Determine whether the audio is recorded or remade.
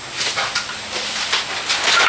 recorded